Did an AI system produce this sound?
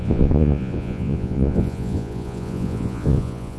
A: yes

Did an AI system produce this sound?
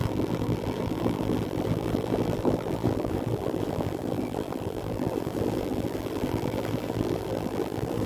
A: yes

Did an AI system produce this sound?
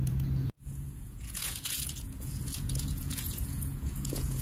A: yes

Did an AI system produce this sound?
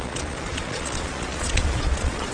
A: yes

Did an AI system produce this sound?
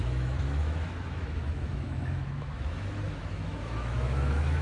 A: yes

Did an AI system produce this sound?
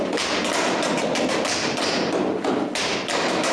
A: no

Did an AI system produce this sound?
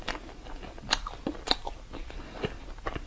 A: no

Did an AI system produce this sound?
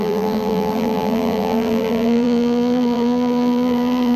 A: yes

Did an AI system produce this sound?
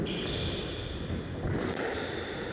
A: no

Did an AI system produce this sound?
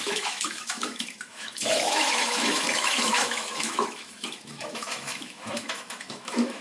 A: yes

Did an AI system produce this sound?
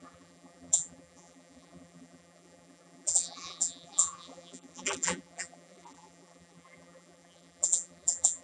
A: yes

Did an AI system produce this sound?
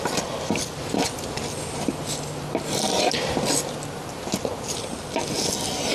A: no